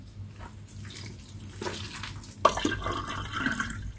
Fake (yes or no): no